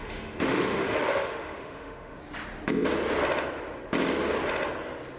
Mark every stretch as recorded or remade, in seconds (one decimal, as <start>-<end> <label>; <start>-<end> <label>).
0.0-2.2 remade; 2.2-5.2 recorded